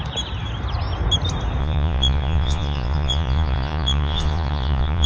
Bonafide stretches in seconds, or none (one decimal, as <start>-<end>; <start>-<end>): 0.0-1.6